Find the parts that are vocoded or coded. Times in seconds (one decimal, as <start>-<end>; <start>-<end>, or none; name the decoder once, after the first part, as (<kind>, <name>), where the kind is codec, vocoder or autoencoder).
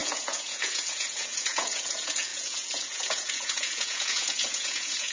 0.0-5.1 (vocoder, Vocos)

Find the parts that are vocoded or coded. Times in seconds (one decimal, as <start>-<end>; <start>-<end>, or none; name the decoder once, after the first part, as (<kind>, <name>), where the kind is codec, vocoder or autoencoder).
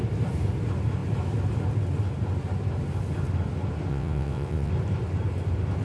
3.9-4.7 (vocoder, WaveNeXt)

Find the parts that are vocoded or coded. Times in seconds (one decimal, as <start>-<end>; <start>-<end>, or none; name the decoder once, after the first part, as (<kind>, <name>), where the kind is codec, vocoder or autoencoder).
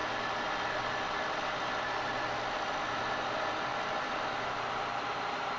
none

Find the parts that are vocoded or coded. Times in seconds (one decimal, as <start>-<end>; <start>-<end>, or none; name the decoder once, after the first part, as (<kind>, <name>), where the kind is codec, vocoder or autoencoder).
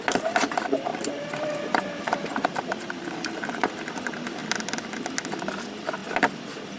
0.9-3.7 (vocoder, BigVGAN v2)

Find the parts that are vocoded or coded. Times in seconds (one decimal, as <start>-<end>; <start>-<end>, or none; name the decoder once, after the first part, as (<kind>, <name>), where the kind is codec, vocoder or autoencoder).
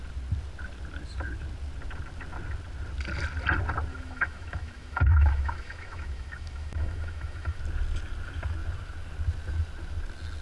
3.9-7.6 (autoencoder, DAC-VAE)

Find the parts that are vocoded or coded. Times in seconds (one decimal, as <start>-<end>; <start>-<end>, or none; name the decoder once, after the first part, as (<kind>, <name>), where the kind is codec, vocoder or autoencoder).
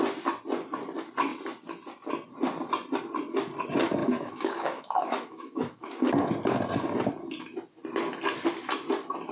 4.0-6.1 (autoencoder, DAC-VAE)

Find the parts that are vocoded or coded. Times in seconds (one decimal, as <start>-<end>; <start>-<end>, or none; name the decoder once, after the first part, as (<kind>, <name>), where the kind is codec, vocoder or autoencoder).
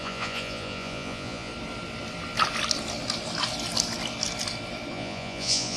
0.0-1.5 (vocoder, Vocos); 4.9-5.8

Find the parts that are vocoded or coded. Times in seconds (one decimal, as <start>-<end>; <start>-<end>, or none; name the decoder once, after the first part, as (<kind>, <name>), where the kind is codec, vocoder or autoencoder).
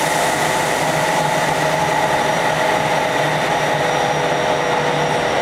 none